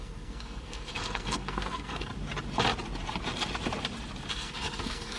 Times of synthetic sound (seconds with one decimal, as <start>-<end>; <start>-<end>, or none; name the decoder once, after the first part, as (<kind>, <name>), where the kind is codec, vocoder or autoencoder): 0.0-2.1 (codec, SNAC); 4.3-5.2